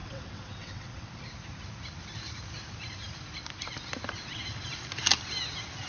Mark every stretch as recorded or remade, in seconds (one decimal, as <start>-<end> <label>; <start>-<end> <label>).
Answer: 0.0-1.1 remade; 1.1-5.9 recorded